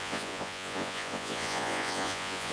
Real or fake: fake